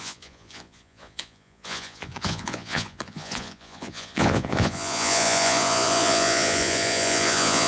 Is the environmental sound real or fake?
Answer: fake